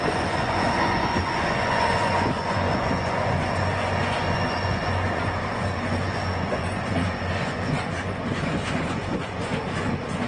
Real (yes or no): no